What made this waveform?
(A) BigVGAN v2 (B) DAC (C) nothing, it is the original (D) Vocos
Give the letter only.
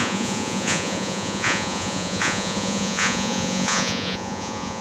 D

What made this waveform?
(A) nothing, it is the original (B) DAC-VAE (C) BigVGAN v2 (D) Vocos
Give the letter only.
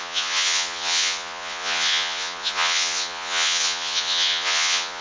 D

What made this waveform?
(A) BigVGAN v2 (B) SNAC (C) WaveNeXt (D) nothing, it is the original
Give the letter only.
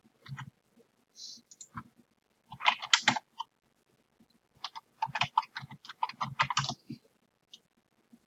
D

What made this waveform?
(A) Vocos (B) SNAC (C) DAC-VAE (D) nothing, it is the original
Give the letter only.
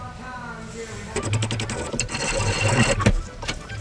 D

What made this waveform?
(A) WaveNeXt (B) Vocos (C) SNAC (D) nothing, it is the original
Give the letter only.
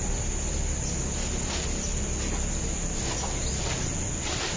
D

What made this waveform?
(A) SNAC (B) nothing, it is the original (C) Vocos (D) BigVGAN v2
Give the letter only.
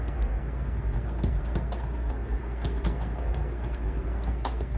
A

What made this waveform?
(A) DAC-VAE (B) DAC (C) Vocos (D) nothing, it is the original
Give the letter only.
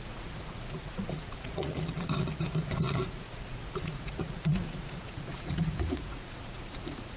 C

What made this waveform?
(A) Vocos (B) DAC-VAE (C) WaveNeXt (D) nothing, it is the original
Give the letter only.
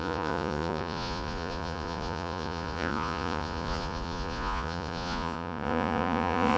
A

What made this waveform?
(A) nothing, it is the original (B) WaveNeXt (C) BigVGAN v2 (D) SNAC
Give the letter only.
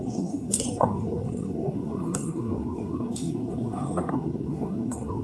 D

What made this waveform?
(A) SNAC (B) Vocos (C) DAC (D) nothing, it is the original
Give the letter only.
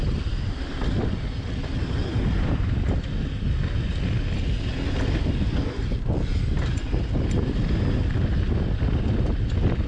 D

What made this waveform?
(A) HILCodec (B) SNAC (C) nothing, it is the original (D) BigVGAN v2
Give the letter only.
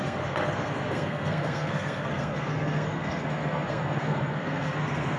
B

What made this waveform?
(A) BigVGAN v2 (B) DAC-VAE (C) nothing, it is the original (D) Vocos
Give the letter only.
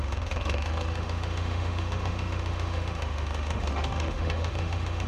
B